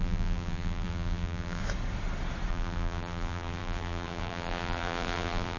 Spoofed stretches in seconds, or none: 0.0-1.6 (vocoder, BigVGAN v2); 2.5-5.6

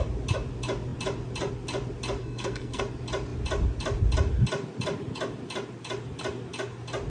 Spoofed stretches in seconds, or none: 2.2-2.8 (codec, SNAC)